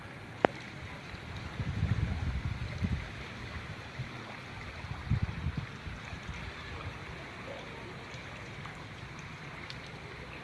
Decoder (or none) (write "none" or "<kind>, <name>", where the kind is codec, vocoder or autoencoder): none